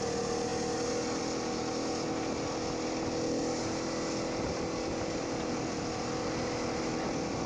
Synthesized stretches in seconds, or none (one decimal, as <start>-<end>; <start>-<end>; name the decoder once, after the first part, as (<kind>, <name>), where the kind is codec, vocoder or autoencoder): none

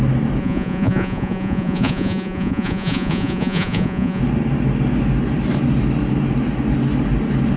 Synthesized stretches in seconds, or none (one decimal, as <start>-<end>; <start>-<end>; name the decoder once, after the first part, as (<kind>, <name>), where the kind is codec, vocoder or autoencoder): 0.4-4.2 (vocoder, Vocos)

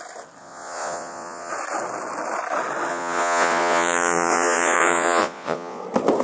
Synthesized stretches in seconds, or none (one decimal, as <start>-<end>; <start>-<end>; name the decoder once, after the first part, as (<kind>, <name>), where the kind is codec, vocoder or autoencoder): 0.4-1.5 (vocoder, Vocos); 2.9-5.8

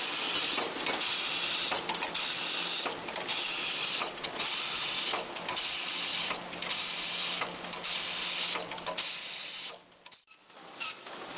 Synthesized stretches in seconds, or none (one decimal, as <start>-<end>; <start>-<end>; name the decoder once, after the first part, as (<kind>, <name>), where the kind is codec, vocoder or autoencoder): 3.3-5.0 (vocoder, Vocos); 9.2-9.7

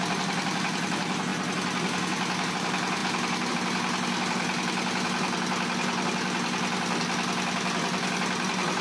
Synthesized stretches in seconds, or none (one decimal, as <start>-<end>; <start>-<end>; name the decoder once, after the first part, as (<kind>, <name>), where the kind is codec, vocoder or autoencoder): none

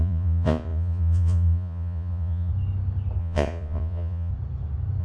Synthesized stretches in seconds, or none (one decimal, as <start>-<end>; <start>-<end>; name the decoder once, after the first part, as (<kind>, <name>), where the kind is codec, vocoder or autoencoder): 0.0-2.5 (vocoder, Vocos); 3.2-4.3

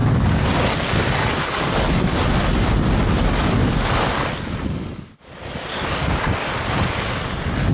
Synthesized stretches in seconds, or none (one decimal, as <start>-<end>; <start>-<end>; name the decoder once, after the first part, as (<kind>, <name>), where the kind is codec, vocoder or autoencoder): none